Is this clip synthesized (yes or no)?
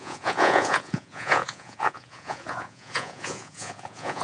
yes